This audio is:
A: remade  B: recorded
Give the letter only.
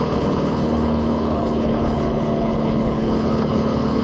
A